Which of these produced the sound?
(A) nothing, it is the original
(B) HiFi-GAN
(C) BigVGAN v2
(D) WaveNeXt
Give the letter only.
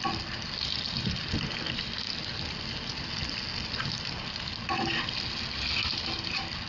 A